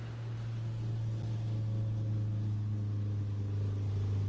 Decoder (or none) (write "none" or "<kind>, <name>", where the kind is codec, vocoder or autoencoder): none